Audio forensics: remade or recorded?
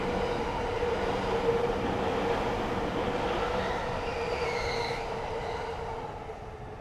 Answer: recorded